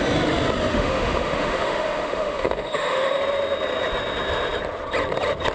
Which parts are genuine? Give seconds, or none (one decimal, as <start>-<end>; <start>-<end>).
0.0-0.7; 3.2-5.5